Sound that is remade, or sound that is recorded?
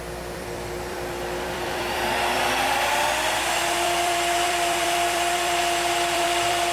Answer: remade